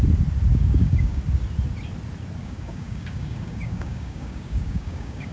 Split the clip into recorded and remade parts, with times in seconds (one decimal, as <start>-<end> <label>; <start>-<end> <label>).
0.0-0.5 recorded; 0.5-1.2 remade; 1.2-2.4 recorded; 2.4-5.3 remade